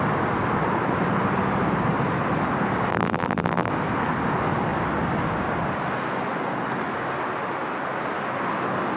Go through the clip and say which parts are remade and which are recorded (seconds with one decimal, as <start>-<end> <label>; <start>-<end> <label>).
0.0-2.9 recorded; 2.9-3.7 remade; 3.7-9.0 recorded

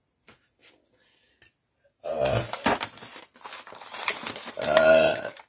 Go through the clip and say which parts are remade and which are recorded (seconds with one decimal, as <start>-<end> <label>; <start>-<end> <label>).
0.0-0.6 remade; 0.6-3.9 recorded; 3.9-5.5 remade

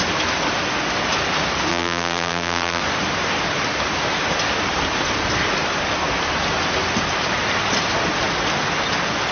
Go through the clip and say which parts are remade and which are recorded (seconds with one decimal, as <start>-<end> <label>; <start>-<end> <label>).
0.0-1.7 recorded; 1.7-2.8 remade; 2.8-9.3 recorded

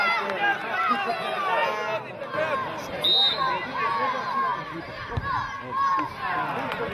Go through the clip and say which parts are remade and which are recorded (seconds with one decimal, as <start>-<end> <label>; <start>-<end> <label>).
0.0-4.5 recorded; 4.5-5.2 remade; 5.2-6.9 recorded

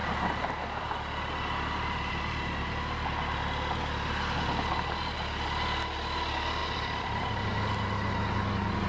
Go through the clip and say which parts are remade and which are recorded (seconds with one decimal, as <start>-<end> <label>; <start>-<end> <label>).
0.0-2.1 remade; 2.1-6.6 recorded; 6.6-7.5 remade; 7.5-8.9 recorded

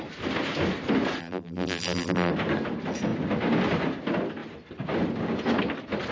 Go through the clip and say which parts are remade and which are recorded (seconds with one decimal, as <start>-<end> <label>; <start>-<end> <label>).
0.0-1.2 recorded; 1.2-2.3 remade; 2.3-6.1 recorded

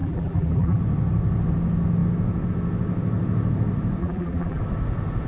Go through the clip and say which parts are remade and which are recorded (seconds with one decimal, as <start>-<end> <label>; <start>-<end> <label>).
0.0-0.8 remade; 0.8-4.0 recorded; 4.0-4.6 remade; 4.6-5.3 recorded

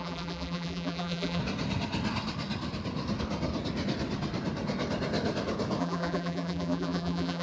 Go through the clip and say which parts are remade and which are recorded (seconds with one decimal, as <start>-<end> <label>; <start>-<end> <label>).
0.0-1.4 remade; 1.4-5.8 recorded; 5.8-7.4 remade